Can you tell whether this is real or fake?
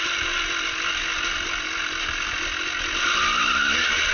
real